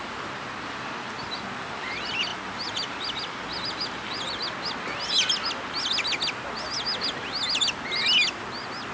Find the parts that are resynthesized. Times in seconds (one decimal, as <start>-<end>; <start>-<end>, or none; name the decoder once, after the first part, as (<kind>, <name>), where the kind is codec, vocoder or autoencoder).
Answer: none